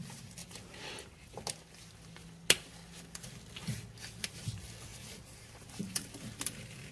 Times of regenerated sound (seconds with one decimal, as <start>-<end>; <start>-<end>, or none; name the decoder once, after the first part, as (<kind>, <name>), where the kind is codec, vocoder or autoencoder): none